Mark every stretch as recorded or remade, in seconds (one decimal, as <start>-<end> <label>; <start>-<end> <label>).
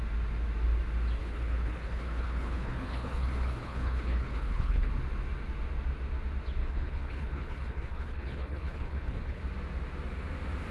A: 0.0-1.2 recorded; 1.2-4.9 remade; 4.9-6.6 recorded; 6.6-9.4 remade; 9.4-10.7 recorded